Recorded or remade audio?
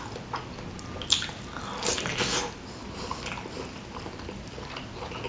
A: recorded